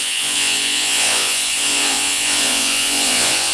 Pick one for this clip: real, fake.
fake